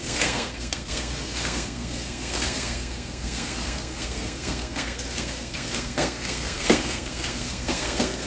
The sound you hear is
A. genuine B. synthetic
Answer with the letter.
B